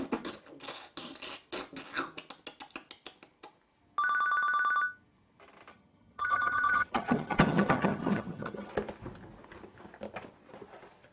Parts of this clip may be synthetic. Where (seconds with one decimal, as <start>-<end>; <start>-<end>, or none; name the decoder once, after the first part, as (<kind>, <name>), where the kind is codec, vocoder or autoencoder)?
5.7-8.7 (vocoder, HiFi-GAN)